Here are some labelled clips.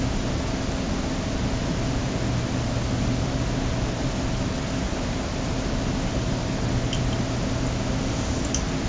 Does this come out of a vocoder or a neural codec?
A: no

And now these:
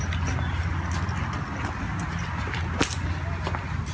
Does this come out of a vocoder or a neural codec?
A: no